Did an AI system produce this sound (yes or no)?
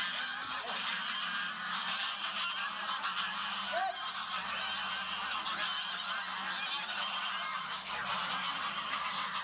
no